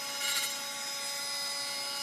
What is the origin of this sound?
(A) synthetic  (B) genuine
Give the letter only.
B